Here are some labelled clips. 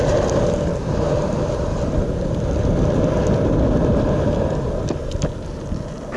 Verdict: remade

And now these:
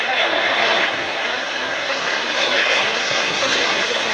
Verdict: remade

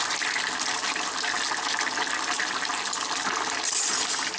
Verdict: recorded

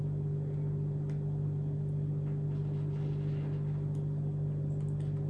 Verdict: recorded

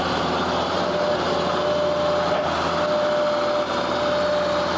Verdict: recorded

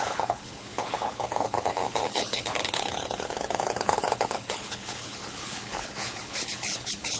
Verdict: remade